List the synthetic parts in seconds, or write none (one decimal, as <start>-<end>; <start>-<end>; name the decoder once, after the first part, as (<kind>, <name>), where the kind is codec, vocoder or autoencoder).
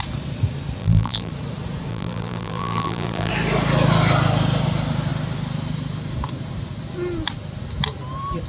0.8-1.3 (vocoder, BigVGAN v2); 1.9-3.3